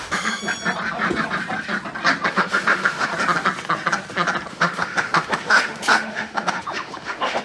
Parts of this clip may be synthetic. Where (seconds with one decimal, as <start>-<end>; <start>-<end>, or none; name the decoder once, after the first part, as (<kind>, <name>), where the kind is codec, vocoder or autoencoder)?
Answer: 0.0-0.4 (autoencoder, DAC-VAE); 2.3-3.1; 4.5-7.4